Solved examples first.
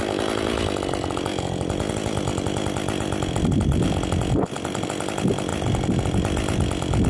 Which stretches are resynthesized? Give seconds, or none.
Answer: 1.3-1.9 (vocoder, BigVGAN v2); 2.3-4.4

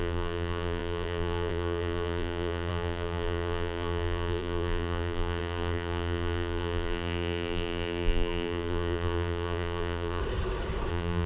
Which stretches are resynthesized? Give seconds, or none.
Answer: 0.0-10.2 (vocoder, BigVGAN v2); 10.9-11.3

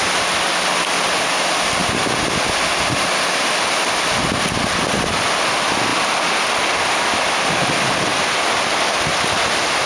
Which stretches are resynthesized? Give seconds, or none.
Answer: none

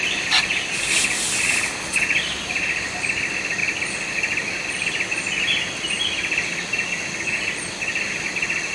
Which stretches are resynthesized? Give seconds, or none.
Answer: none

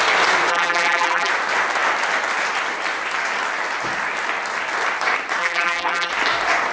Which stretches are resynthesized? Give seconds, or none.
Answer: 0.5-1.3 (vocoder, BigVGAN v2); 5.4-6.1